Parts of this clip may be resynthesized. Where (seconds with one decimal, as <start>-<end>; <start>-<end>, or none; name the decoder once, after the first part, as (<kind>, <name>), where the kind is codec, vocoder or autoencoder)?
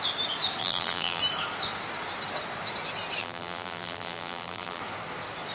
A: 0.6-1.2 (vocoder, BigVGAN v2); 3.2-4.8